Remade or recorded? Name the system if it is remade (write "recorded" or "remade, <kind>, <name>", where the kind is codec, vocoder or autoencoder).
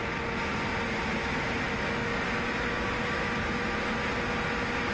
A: recorded